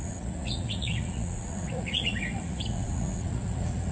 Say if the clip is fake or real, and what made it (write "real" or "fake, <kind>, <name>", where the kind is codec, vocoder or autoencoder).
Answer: fake, vocoder, Vocos